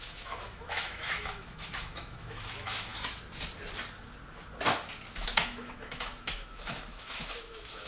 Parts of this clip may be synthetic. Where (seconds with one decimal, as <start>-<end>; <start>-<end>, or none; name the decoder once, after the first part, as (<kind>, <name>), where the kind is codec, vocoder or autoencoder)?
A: 0.0-2.9 (autoencoder, DAC-VAE); 5.1-7.9